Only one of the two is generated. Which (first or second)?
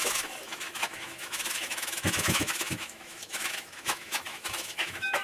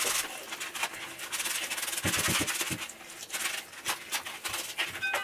first